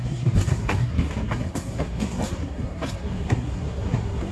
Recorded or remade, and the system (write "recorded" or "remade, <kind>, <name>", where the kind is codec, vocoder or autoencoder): remade, codec, SNAC